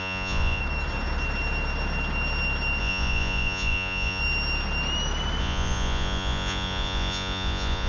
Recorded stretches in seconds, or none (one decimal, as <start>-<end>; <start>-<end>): 0.6-2.8; 4.2-5.4